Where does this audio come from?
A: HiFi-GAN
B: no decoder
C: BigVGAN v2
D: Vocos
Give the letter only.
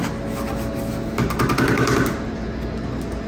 B